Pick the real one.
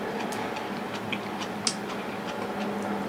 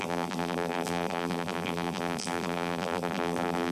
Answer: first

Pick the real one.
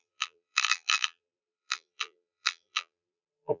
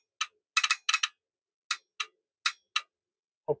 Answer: second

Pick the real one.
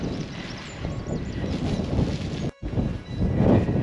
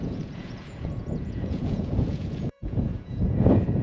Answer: first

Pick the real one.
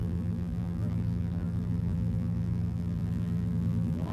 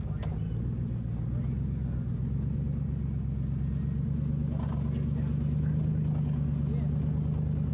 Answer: second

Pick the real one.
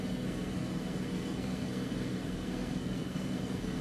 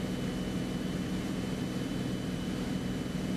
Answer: second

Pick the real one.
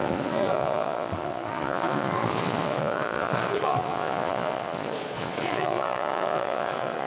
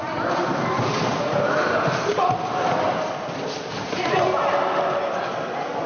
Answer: second